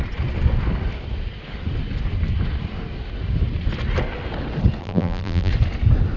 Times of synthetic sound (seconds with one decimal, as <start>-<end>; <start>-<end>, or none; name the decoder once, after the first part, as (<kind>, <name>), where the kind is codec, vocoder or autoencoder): 4.8-5.5 (vocoder, BigVGAN v2)